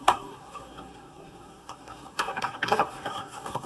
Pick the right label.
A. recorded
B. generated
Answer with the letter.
B